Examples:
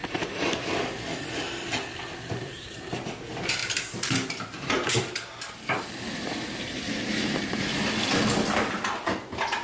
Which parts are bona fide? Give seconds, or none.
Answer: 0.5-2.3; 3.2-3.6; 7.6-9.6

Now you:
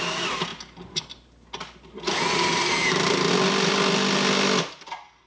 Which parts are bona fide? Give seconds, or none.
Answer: 0.0-5.3

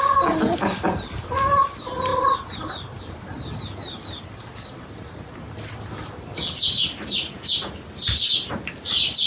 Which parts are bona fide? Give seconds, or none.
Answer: 0.0-9.3

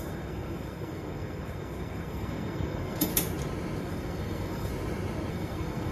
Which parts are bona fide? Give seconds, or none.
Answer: 3.1-3.8; 4.7-5.3

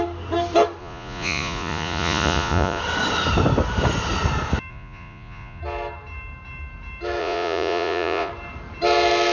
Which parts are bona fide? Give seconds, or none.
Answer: 0.0-0.8; 2.8-4.7; 5.6-7.2; 8.3-9.3

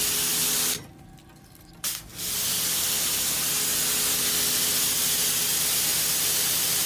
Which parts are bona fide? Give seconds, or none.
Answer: 0.0-6.9

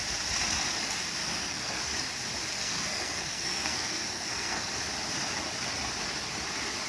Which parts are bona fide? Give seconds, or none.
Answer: 0.0-1.2; 1.8-2.5; 4.7-6.9